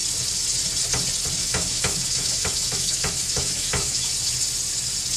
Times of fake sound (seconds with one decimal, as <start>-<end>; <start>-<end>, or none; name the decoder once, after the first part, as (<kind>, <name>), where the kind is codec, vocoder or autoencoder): 1.4-4.1 (autoencoder, DAC-VAE)